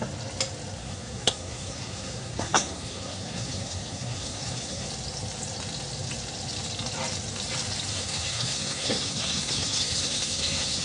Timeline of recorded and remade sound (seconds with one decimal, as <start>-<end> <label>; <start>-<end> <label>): 0.0-0.8 recorded; 0.8-4.9 remade; 4.9-7.9 recorded; 7.9-10.8 remade